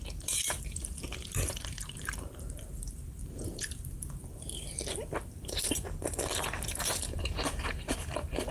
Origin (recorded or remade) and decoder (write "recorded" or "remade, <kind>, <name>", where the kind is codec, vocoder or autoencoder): remade, vocoder, BigVGAN v2